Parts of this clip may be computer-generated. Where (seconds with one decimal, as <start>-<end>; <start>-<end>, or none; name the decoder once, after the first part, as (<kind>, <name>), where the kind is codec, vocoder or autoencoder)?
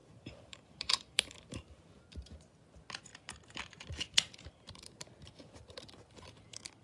0.0-2.0 (vocoder, BigVGAN v2)